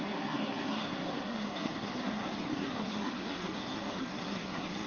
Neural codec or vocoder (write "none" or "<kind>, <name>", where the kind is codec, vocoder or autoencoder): codec, SNAC